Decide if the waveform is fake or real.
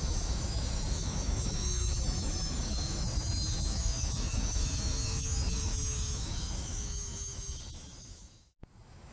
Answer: fake